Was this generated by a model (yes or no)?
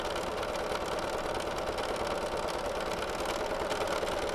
no